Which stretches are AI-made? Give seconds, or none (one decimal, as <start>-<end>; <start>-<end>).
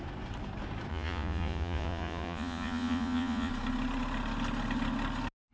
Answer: 0.9-3.5